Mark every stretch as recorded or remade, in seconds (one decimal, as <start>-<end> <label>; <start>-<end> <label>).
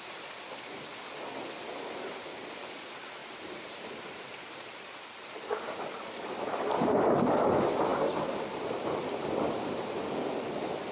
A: 0.0-3.2 recorded; 3.2-7.5 remade; 7.5-10.9 recorded